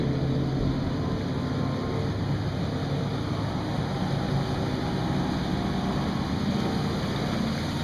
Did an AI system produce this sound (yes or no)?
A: no